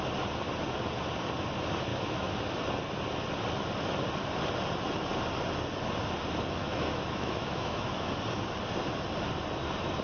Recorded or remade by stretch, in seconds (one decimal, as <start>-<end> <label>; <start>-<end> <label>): 0.0-1.9 recorded; 1.9-2.4 remade; 2.4-6.6 recorded; 6.6-8.1 remade; 8.1-10.0 recorded